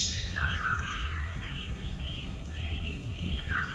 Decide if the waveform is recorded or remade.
remade